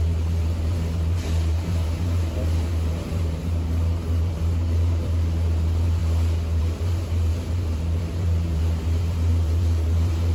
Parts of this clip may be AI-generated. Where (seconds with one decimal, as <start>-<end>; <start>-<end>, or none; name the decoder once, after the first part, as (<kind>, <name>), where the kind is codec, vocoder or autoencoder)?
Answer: 0.0-6.0 (vocoder, BigVGAN v2); 6.6-10.3